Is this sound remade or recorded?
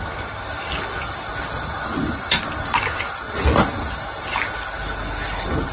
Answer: recorded